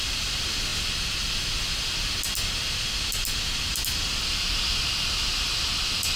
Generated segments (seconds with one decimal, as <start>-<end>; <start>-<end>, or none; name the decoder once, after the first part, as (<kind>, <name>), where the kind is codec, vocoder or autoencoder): none